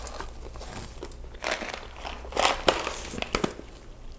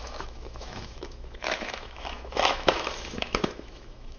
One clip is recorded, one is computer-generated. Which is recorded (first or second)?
first